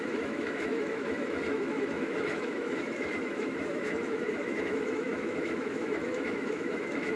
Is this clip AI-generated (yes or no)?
yes